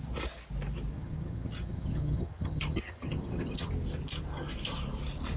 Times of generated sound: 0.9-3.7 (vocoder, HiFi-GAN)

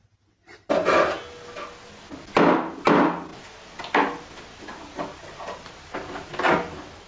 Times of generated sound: none

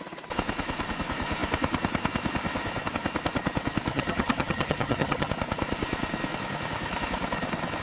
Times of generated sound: 3.9-5.3 (vocoder, HiFi-GAN)